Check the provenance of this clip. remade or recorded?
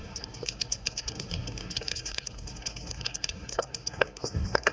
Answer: remade